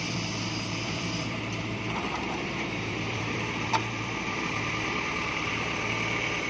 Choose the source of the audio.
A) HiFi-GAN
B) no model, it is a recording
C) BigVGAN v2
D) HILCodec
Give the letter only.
C